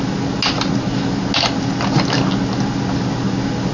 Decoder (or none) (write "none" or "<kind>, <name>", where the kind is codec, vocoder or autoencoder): none